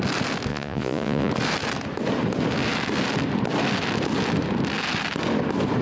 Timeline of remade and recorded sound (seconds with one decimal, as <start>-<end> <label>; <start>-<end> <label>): 0.0-0.5 recorded; 0.5-1.3 remade; 1.3-5.8 recorded

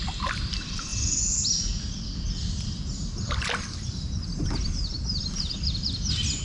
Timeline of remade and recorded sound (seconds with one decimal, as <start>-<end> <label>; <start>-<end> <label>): 0.0-6.4 recorded

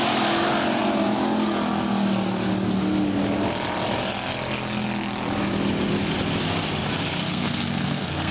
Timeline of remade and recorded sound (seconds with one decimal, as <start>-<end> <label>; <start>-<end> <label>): 0.0-7.3 recorded; 7.3-8.3 remade

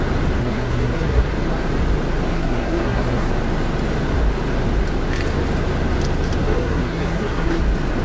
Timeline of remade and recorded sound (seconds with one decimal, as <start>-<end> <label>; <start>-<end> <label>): 0.0-0.4 recorded; 0.4-1.2 remade; 1.2-2.3 recorded; 2.3-3.3 remade; 3.3-6.4 recorded; 6.4-7.6 remade; 7.6-8.0 recorded